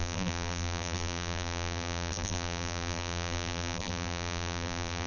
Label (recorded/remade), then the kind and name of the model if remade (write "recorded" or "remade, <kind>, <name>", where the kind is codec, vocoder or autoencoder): remade, vocoder, BigVGAN v2